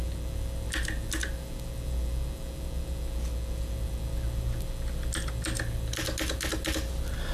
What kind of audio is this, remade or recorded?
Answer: recorded